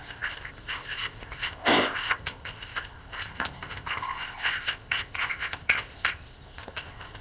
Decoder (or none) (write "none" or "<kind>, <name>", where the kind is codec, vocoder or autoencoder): codec, ZipCodec